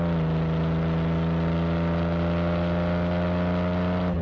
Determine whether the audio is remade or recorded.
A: recorded